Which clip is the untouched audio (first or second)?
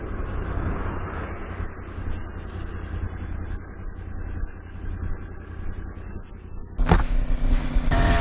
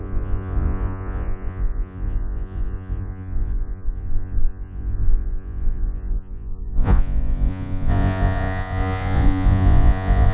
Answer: first